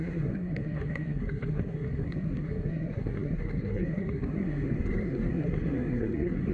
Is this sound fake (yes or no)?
yes